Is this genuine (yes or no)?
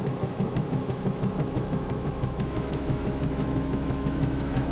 no